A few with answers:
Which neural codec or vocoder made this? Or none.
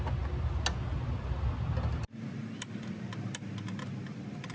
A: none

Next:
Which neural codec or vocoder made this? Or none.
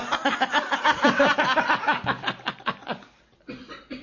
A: vocoder, BigVGAN v2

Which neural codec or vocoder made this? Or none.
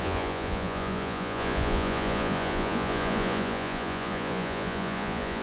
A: vocoder, Vocos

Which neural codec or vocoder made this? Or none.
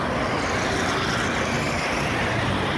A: none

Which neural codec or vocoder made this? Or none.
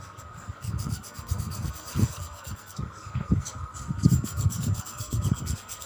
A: codec, SNAC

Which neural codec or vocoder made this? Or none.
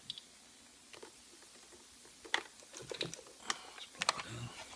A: none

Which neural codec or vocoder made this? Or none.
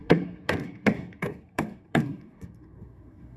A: codec, SNAC